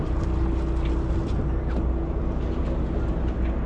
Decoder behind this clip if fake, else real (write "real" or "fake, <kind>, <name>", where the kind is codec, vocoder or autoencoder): real